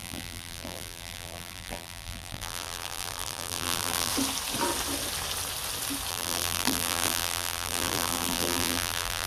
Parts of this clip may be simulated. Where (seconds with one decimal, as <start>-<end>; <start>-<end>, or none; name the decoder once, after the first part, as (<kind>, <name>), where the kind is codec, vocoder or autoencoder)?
0.0-4.1 (vocoder, BigVGAN v2); 6.1-9.3